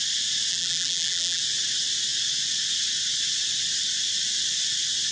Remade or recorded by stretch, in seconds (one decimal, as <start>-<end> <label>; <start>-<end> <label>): 0.0-0.5 recorded; 0.5-1.4 remade; 1.4-5.1 recorded